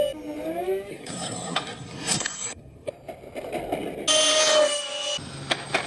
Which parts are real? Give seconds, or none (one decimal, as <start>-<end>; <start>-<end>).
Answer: 0.0-0.9; 2.9-5.9